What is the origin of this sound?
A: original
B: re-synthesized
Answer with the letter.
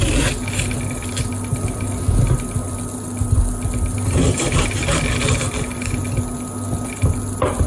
A